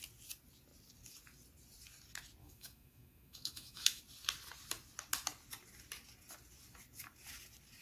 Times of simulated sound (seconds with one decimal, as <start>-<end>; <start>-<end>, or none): 2.4-4.0